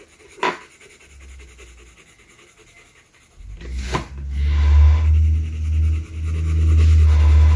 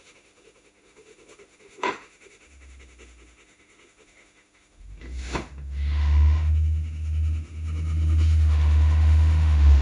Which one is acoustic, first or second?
first